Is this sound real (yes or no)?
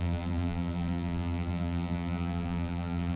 no